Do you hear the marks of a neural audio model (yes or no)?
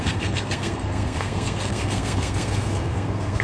yes